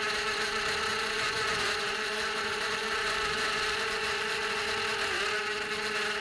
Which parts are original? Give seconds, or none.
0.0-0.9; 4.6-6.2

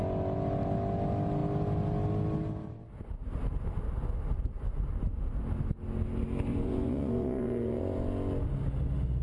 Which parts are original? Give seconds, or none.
0.0-6.5; 8.1-9.2

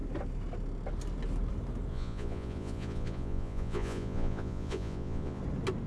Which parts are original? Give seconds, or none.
0.0-1.9; 5.4-5.9

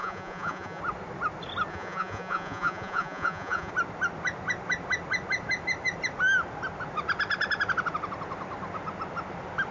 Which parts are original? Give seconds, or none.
0.8-1.7; 3.7-9.7